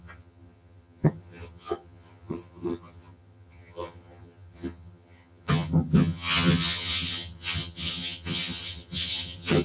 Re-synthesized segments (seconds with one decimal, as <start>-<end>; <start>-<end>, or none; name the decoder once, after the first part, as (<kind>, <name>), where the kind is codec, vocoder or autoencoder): 0.0-9.6 (vocoder, HiFi-GAN)